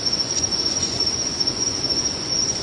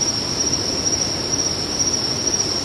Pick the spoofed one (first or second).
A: first